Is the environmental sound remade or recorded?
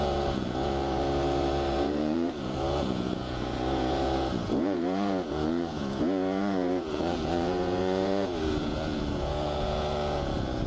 remade